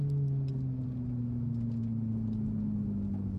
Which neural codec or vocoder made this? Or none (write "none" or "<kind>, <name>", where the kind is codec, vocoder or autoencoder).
none